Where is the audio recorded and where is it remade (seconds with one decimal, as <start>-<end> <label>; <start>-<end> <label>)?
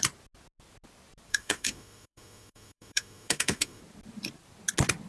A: 0.0-1.3 recorded; 1.3-3.8 remade; 3.8-5.1 recorded